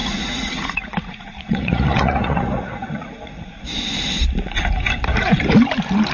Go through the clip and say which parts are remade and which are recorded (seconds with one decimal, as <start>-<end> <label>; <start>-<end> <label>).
0.0-3.6 remade; 3.6-6.1 recorded